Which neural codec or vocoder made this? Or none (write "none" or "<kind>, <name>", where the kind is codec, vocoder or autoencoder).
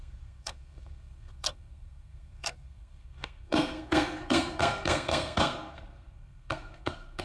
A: codec, SNAC